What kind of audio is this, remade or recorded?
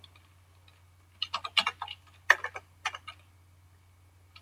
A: recorded